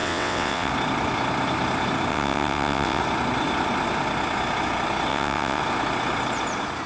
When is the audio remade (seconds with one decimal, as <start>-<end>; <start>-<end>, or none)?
0.0-0.7; 2.1-3.0; 5.1-5.6